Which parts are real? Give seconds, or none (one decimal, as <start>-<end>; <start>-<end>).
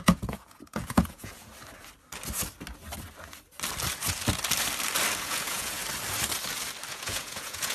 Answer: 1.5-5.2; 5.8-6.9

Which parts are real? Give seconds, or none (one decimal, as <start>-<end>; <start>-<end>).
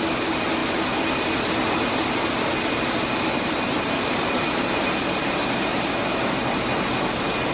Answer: 0.0-7.5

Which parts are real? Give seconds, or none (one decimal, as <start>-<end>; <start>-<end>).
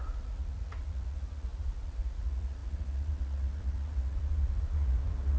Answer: none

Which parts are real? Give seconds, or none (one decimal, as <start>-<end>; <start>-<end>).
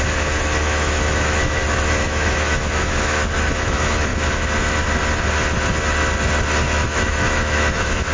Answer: 4.1-6.8